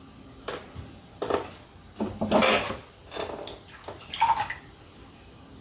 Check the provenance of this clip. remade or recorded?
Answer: recorded